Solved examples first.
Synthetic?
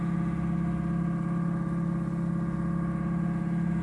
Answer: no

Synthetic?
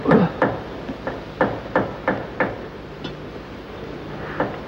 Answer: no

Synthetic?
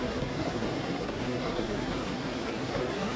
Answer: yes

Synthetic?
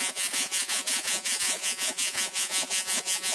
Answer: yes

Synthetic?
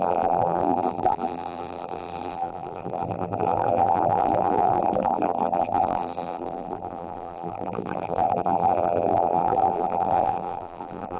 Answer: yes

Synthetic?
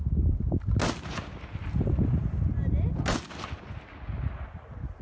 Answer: no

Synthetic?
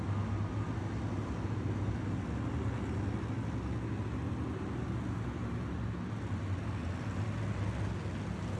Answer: no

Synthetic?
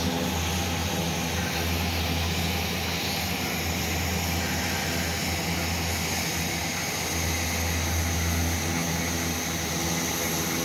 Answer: no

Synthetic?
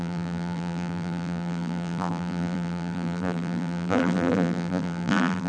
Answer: yes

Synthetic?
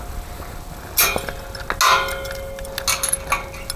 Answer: no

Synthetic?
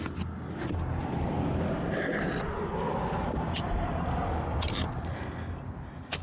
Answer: no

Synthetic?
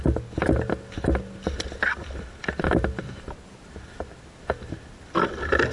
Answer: no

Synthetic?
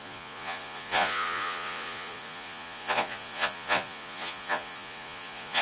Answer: yes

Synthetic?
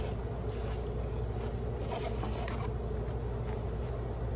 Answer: no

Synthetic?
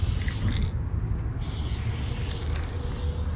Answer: no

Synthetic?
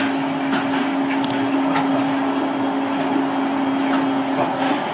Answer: no